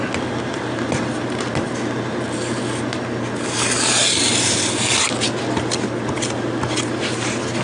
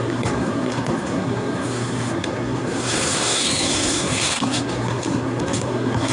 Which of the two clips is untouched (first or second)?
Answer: first